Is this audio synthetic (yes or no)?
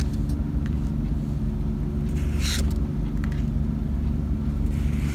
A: no